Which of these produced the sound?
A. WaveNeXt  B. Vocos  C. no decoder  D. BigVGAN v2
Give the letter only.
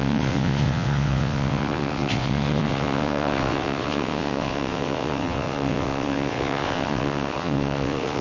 A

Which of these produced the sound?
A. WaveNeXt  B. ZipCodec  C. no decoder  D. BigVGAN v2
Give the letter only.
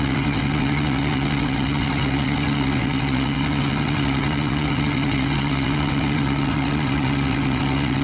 A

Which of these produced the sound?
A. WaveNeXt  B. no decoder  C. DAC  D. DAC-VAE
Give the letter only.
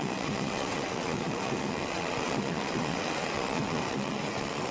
A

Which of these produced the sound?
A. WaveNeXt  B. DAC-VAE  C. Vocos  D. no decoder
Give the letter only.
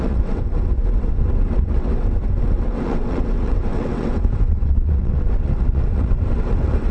A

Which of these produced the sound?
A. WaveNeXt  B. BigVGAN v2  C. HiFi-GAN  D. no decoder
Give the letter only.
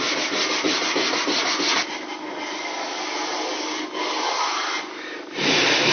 D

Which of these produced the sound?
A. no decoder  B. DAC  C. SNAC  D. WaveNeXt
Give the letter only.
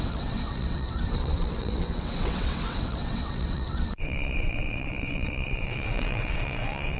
D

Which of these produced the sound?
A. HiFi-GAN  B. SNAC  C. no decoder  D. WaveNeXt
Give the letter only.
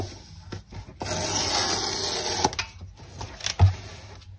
C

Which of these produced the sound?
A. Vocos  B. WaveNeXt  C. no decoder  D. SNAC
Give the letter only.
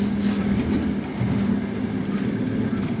C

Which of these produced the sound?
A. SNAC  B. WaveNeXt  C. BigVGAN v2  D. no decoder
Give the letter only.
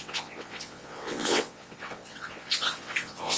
B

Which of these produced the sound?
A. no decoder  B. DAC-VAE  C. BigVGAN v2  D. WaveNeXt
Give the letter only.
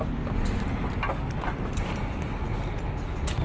A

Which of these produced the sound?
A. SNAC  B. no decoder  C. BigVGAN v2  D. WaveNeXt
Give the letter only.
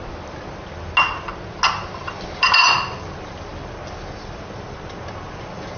B